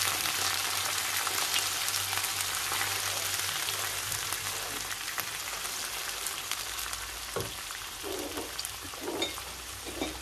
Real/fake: real